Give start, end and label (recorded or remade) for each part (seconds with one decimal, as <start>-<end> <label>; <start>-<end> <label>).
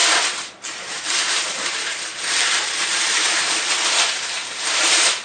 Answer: 0.0-5.2 remade